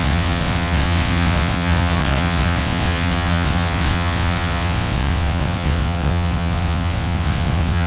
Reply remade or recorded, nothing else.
remade